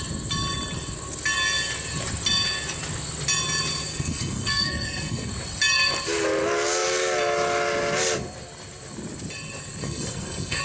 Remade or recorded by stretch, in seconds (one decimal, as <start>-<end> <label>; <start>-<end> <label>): 0.0-3.9 recorded; 3.9-5.3 remade; 5.3-9.8 recorded; 9.8-10.6 remade